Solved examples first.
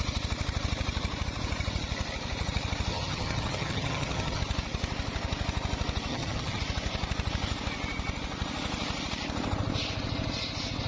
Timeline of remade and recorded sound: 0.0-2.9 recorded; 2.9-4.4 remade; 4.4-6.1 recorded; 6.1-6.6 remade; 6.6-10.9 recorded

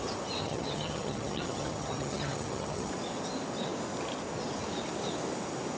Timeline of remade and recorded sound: 0.0-0.4 recorded; 0.4-2.9 remade; 2.9-5.8 recorded

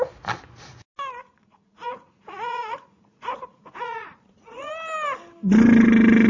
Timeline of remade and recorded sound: 0.0-1.2 recorded; 1.2-4.7 remade; 4.7-6.3 recorded